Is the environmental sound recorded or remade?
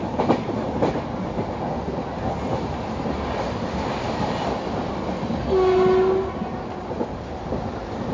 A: recorded